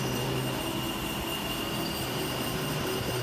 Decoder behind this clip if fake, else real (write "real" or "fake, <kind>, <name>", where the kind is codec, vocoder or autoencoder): real